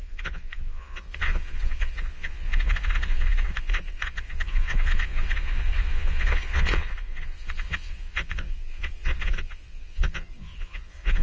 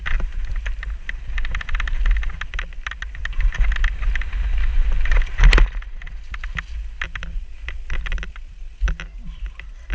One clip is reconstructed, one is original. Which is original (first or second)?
second